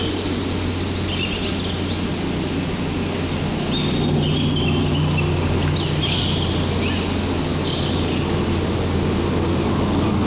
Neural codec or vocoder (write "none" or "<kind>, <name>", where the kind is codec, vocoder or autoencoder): none